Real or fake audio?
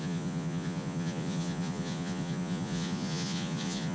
fake